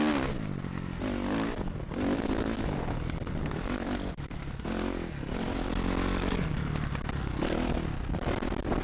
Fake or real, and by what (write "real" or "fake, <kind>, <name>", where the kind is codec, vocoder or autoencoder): real